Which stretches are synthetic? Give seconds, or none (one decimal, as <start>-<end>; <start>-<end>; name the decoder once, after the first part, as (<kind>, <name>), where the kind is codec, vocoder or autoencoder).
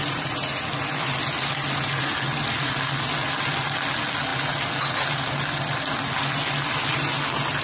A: none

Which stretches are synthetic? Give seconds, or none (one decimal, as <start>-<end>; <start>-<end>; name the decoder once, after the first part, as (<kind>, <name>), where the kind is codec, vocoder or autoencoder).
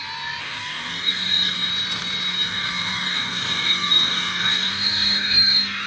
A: 0.4-1.7 (codec, DAC); 2.3-5.9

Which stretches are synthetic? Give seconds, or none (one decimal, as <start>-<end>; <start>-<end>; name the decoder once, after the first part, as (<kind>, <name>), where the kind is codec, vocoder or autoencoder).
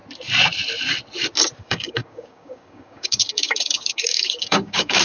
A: 1.6-5.0 (codec, DAC)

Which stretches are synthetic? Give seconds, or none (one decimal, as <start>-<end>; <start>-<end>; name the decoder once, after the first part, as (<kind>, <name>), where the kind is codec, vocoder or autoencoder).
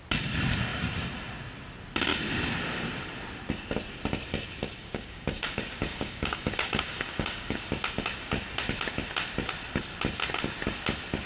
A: 4.8-7.6 (codec, DAC)